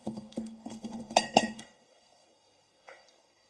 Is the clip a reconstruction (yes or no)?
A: yes